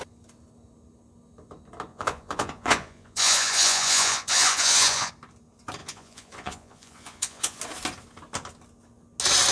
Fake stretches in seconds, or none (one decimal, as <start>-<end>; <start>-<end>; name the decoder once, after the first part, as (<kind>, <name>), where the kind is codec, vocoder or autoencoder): 1.9-5.1 (vocoder, Vocos); 5.8-7.6